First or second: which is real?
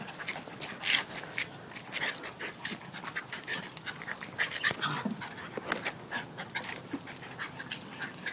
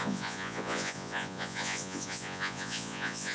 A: first